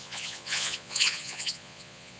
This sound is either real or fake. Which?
fake